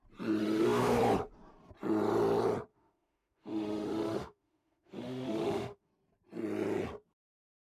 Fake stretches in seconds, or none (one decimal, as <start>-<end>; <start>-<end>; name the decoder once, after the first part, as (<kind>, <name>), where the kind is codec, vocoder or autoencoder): 0.4-1.0 (autoencoder, DAC-VAE); 2.7-5.9